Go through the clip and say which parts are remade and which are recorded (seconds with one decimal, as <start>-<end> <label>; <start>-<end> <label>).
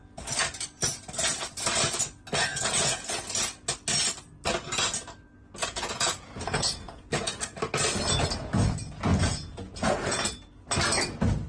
0.0-2.5 recorded; 2.5-3.2 remade; 3.2-5.6 recorded; 5.6-7.3 remade; 7.3-9.1 recorded; 9.1-10.3 remade; 10.3-11.5 recorded